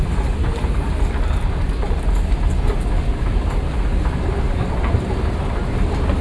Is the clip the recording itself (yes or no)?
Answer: yes